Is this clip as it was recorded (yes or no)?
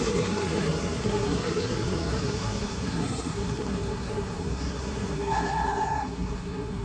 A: no